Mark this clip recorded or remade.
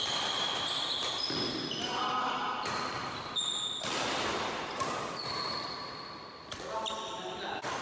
recorded